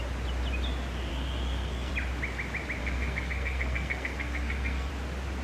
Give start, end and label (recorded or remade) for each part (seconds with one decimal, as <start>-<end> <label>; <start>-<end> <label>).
0.0-1.1 recorded; 1.1-1.9 remade; 1.9-2.8 recorded; 2.8-4.9 remade; 4.9-5.4 recorded

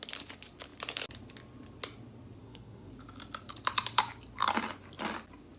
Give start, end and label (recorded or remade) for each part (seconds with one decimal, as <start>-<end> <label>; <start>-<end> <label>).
0.0-2.4 recorded; 2.4-2.9 remade; 2.9-5.6 recorded

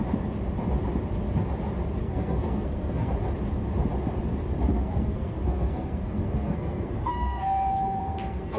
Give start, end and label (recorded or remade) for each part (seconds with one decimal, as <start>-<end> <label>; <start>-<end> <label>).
0.0-2.0 recorded; 2.0-3.1 remade; 3.1-4.7 recorded; 4.7-8.6 remade

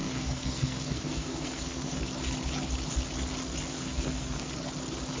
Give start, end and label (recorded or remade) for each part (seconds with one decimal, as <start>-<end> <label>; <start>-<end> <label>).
0.0-2.0 remade; 2.0-3.7 recorded; 3.7-4.5 remade; 4.5-5.2 recorded